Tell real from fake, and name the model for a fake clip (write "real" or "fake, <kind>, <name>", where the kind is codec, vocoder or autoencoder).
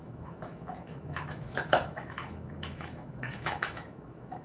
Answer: fake, autoencoder, DAC-VAE